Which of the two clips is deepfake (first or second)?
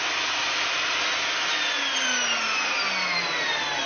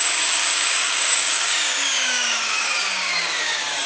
second